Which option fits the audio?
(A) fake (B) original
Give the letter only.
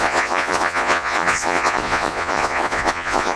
A